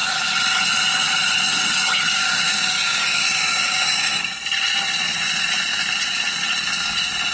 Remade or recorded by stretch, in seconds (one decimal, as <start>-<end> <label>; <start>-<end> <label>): 0.0-2.1 recorded; 2.1-4.4 remade; 4.4-7.3 recorded